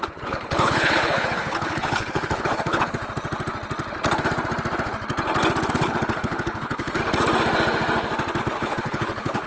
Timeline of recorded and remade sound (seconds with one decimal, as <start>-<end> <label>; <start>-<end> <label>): 0.0-3.0 remade; 3.0-5.7 recorded; 5.7-7.0 remade; 7.0-8.4 recorded; 8.4-9.5 remade